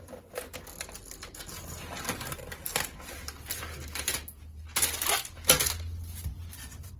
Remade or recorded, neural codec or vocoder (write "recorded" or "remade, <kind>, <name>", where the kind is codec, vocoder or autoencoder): recorded